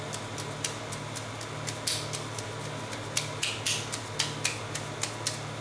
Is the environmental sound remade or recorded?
recorded